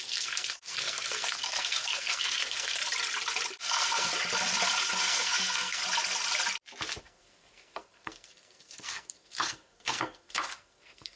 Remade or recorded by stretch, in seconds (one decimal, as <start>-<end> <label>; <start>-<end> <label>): 0.0-2.8 remade; 2.8-3.6 recorded; 3.6-4.1 remade; 4.1-5.0 recorded; 5.0-5.8 remade; 5.8-7.0 recorded; 7.0-11.2 remade